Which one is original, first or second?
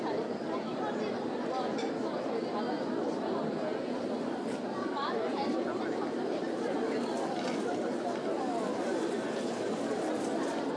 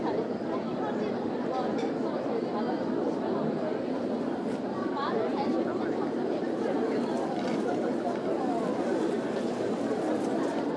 first